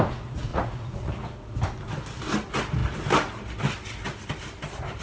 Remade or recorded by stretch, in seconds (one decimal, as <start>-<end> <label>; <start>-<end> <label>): 0.0-0.5 recorded; 0.5-1.1 remade; 1.1-5.0 recorded